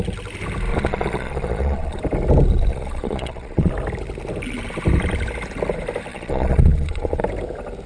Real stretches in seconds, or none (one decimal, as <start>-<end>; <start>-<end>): 0.0-0.7; 2.0-2.5; 3.7-6.1; 7.2-7.9